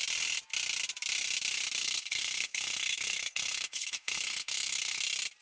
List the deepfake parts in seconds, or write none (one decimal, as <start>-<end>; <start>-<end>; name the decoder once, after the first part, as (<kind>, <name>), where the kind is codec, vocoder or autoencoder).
1.8-5.0 (codec, SNAC)